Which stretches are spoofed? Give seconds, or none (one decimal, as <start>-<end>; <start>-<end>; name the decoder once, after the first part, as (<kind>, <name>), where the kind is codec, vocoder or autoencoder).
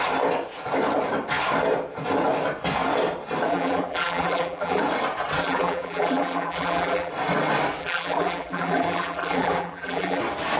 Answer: 3.5-4.8 (vocoder, BigVGAN v2); 5.4-7.1; 7.8-10.2